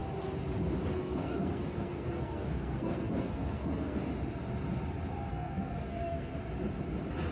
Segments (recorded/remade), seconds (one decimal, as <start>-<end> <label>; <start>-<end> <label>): 0.0-1.0 recorded; 1.0-4.0 remade; 4.0-5.3 recorded; 5.3-6.3 remade; 6.3-7.3 recorded